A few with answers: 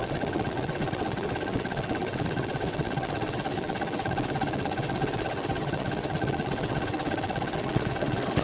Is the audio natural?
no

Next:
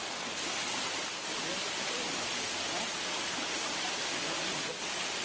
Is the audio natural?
yes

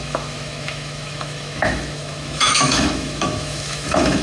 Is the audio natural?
no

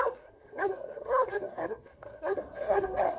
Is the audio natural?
no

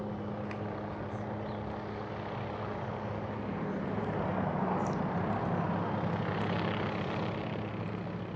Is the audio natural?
yes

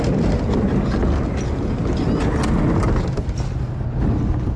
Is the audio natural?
yes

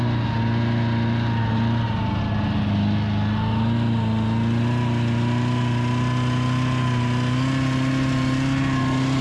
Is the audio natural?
yes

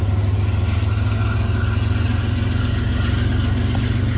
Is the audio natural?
yes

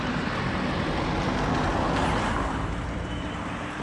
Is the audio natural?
no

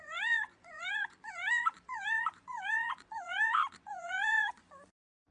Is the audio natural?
no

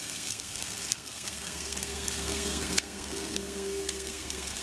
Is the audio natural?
no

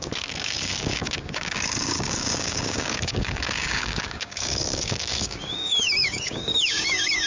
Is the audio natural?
no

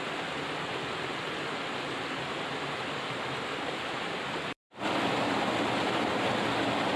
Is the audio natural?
yes